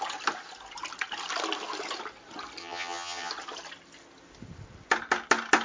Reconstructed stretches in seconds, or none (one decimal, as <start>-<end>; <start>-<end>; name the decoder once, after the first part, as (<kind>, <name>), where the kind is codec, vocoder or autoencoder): 2.6-3.3 (vocoder, HiFi-GAN)